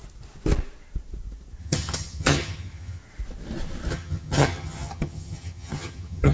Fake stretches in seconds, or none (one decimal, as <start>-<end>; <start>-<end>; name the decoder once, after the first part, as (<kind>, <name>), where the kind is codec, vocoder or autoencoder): 1.6-3.0 (vocoder, HiFi-GAN); 3.9-6.3